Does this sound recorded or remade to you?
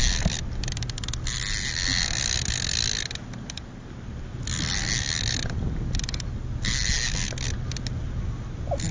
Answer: recorded